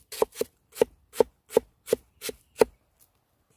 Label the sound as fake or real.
real